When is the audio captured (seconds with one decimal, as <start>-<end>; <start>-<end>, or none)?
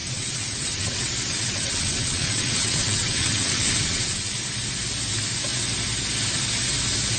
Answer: 4.3-7.2